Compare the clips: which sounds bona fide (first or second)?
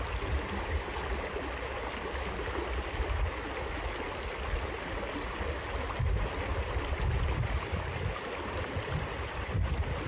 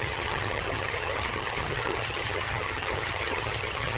first